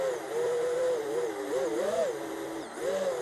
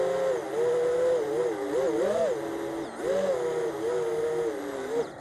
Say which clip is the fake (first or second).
first